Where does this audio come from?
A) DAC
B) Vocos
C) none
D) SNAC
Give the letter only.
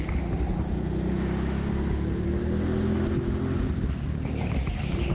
C